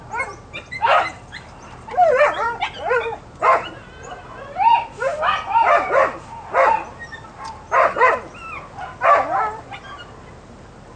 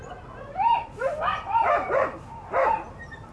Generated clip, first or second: second